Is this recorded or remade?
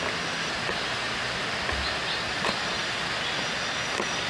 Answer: recorded